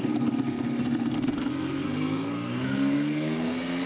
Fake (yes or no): yes